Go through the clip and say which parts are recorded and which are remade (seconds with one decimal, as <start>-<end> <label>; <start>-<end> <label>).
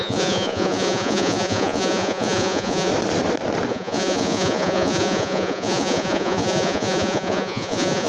0.0-2.9 remade; 2.9-3.7 recorded; 3.7-8.1 remade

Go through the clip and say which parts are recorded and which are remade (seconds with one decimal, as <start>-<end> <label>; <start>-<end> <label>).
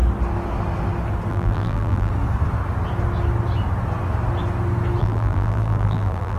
0.0-1.3 recorded; 1.3-2.1 remade; 2.1-5.0 recorded; 5.0-6.4 remade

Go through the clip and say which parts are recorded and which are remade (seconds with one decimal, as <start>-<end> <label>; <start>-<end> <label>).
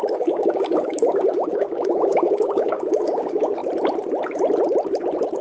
0.0-3.6 remade; 3.6-5.4 recorded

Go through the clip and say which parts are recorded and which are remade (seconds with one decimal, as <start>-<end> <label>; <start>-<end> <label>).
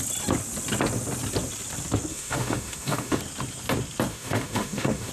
0.0-2.1 recorded; 2.1-3.2 remade; 3.2-4.1 recorded; 4.1-5.1 remade